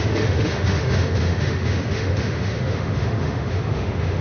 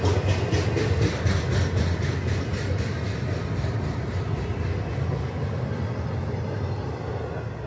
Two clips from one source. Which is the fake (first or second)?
first